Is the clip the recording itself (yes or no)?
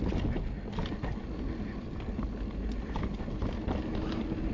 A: yes